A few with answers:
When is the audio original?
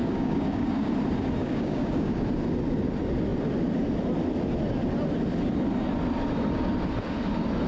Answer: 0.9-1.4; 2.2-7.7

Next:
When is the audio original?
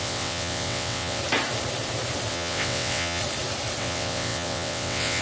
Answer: 1.2-2.3; 3.2-3.8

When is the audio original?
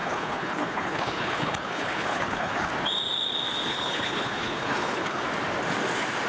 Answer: 2.7-3.7; 5.2-6.3